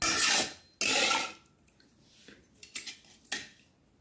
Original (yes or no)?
yes